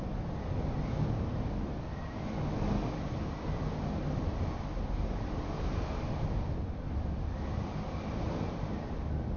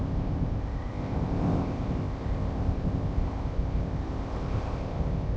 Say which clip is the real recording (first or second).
first